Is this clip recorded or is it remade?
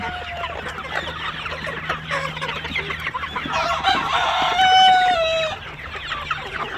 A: recorded